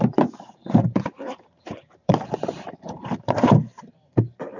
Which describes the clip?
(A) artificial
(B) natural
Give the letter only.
A